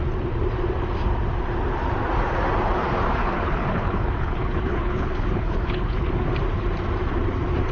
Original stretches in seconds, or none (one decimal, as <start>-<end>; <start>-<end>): 0.0-3.2; 6.1-7.7